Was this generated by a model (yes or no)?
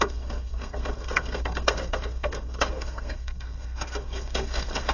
yes